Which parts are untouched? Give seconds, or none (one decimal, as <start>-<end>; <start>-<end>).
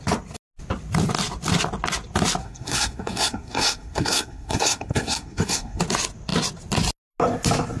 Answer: 0.0-2.4; 5.8-7.8